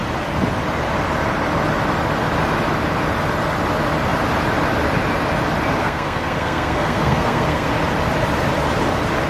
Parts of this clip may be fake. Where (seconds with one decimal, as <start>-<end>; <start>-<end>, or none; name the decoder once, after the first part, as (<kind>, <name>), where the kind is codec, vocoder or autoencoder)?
5.8-7.7 (codec, SNAC)